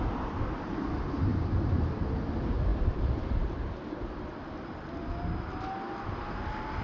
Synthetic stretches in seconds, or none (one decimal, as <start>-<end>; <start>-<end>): 1.3-1.9; 2.7-3.9